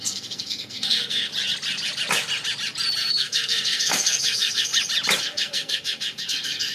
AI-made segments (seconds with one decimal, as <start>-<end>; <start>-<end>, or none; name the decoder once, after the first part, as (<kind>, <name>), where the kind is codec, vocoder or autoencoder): 0.0-1.3 (codec, SNAC); 3.1-4.7; 5.2-6.7